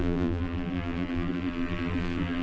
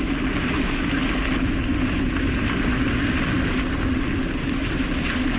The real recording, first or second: second